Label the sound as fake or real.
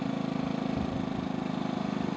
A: real